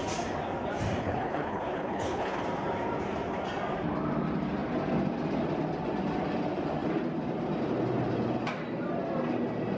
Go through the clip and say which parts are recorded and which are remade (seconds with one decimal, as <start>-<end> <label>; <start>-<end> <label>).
0.0-1.0 recorded; 1.0-2.4 remade; 2.4-9.8 recorded